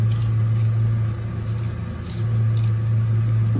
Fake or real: real